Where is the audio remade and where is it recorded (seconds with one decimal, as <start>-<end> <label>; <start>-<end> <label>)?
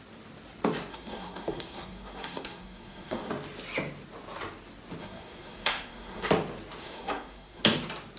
0.0-0.9 recorded; 0.9-3.3 remade; 3.3-5.0 recorded; 5.0-6.3 remade; 6.3-6.8 recorded; 6.8-7.6 remade; 7.6-8.2 recorded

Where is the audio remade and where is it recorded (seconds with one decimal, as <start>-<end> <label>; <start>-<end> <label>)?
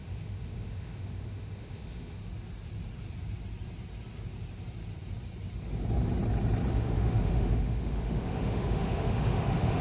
0.0-2.2 remade; 2.2-6.7 recorded; 6.7-9.8 remade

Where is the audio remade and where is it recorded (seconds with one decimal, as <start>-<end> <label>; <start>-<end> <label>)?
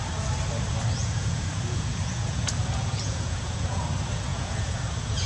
0.0-1.0 recorded; 1.0-3.8 remade; 3.8-4.3 recorded; 4.3-5.3 remade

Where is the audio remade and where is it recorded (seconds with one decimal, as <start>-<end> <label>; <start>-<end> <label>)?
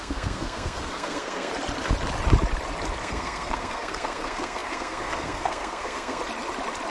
0.0-1.5 remade; 1.5-3.0 recorded; 3.0-6.2 remade; 6.2-6.9 recorded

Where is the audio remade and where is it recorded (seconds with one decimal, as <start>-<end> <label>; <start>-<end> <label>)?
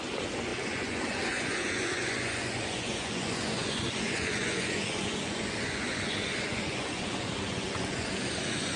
0.0-8.8 remade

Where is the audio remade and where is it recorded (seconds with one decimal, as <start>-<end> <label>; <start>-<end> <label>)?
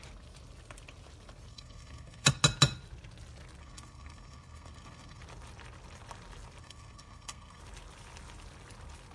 0.0-1.5 recorded; 1.5-2.4 remade; 2.4-3.6 recorded; 3.6-5.2 remade; 5.2-6.6 recorded; 6.6-7.6 remade; 7.6-9.1 recorded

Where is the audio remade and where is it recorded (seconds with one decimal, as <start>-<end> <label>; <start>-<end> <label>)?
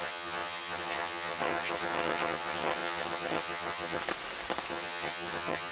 0.0-4.0 remade; 4.0-4.7 recorded; 4.7-5.7 remade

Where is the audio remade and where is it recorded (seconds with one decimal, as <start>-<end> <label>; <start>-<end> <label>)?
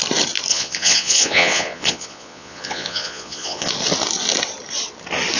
0.0-0.5 recorded; 0.5-3.7 remade; 3.7-5.4 recorded